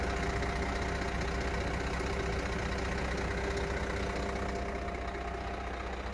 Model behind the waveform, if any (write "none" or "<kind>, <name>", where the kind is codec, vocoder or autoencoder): none